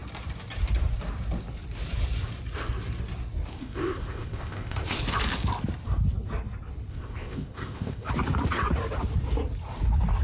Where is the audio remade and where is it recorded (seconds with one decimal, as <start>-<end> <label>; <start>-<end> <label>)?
0.0-3.5 recorded; 3.5-5.0 remade; 5.0-6.9 recorded; 6.9-8.1 remade; 8.1-10.2 recorded